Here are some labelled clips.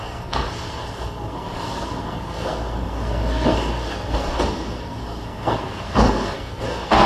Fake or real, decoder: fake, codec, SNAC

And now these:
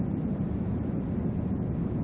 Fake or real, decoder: real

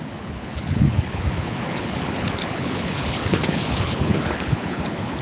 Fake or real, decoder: fake, codec, HILCodec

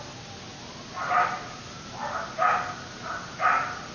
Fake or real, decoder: real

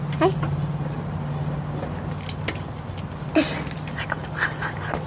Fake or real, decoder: real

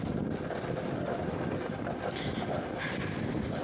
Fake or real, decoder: real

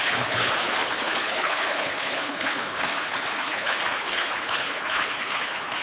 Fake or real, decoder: fake, codec, HILCodec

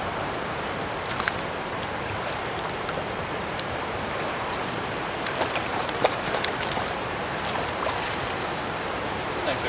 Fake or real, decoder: fake, vocoder, BigVGAN v2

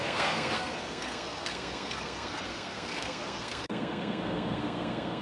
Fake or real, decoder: fake, codec, SNAC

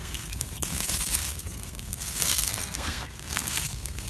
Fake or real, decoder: fake, codec, SNAC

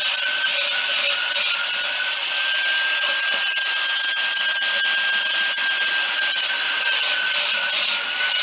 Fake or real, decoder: real